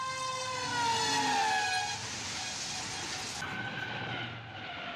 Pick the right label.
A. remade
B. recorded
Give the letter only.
B